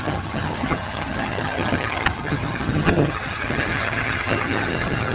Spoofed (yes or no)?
yes